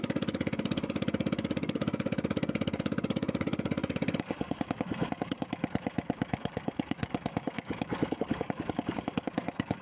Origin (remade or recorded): remade